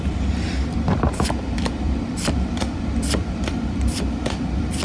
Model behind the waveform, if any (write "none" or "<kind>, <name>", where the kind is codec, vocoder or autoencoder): vocoder, BigVGAN v2